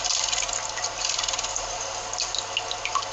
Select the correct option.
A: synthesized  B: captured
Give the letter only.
B